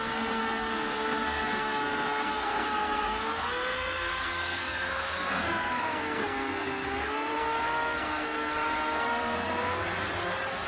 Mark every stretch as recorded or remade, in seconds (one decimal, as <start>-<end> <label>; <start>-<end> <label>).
0.0-9.8 remade; 9.8-10.7 recorded